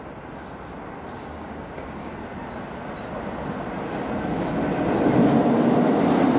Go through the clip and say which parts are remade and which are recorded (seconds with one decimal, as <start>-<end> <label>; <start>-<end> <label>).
0.0-1.3 recorded; 1.3-1.9 remade; 1.9-6.4 recorded